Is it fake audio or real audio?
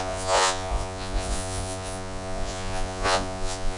fake